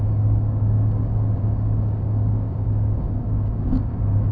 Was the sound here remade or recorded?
remade